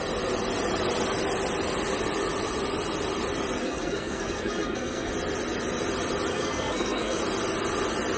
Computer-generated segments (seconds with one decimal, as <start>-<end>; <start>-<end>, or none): 3.6-5.1; 6.3-7.2